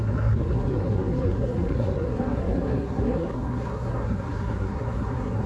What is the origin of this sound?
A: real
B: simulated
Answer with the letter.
B